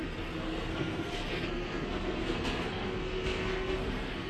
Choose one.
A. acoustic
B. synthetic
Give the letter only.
B